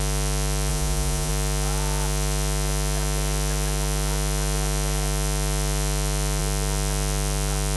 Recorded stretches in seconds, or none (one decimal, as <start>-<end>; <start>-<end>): 0.0-0.7; 1.3-7.8